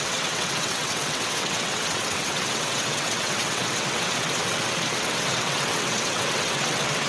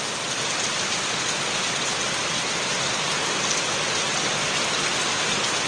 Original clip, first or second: second